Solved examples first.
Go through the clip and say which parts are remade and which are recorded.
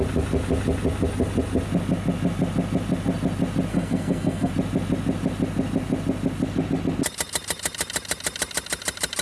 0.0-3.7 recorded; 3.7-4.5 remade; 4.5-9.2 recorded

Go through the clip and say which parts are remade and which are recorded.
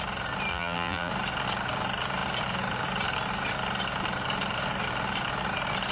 0.0-0.5 recorded; 0.5-1.1 remade; 1.1-5.9 recorded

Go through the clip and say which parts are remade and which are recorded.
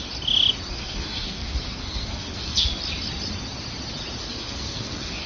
0.0-0.7 recorded; 0.7-2.8 remade; 2.8-4.2 recorded; 4.2-5.3 remade